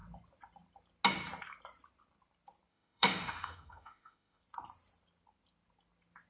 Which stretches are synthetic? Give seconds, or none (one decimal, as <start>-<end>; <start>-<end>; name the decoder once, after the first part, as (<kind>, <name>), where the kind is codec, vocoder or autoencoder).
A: 2.7-4.4 (autoencoder, DAC-VAE)